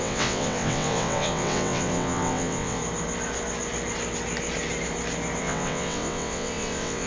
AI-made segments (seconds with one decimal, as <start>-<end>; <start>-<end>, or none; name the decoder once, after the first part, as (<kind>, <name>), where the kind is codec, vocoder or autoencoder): 0.0-2.8 (vocoder, WaveNeXt); 5.4-7.1